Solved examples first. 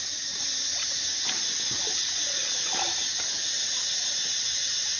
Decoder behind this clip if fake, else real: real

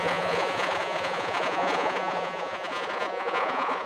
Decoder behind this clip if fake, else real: fake, vocoder, Vocos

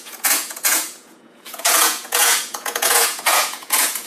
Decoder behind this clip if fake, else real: fake, vocoder, Vocos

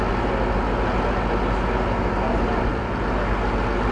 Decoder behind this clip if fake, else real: real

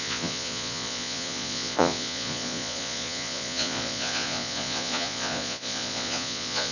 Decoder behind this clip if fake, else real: fake, vocoder, Vocos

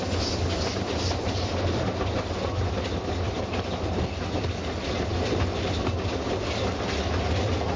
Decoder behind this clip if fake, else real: real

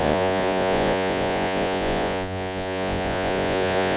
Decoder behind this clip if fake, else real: fake, vocoder, Vocos